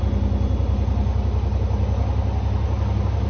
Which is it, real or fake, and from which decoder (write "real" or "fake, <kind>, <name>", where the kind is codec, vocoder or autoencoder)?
real